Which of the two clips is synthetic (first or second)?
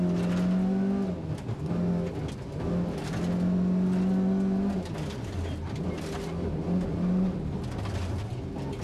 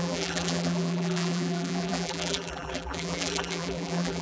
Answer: second